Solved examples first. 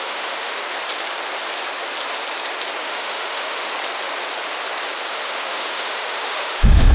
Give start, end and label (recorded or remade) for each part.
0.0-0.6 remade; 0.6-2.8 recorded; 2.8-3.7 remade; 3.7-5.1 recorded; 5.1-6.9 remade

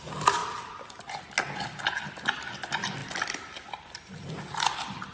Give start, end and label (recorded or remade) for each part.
0.0-5.1 recorded

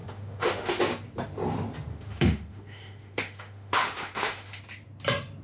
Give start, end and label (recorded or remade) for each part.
0.0-0.8 remade; 0.8-1.9 recorded; 1.9-4.6 remade; 4.6-5.4 recorded

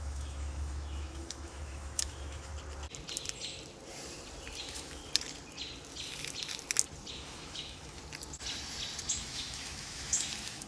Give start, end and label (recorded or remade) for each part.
0.0-2.5 remade; 2.5-4.6 recorded; 4.6-5.0 remade; 5.0-7.1 recorded; 7.1-8.0 remade; 8.0-9.1 recorded; 9.1-10.7 remade

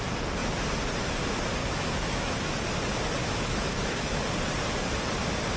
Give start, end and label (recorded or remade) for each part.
0.0-1.6 recorded; 1.6-2.6 remade; 2.6-3.2 recorded; 3.2-4.2 remade; 4.2-5.6 recorded